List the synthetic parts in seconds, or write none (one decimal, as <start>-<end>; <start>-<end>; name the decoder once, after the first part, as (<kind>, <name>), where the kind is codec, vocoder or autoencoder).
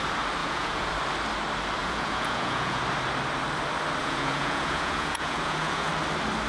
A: 0.4-0.9 (vocoder, Vocos); 1.8-2.8; 4.0-5.9